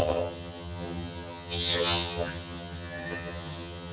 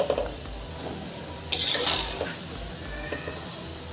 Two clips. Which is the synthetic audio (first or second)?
first